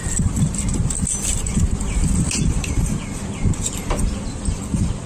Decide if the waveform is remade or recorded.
recorded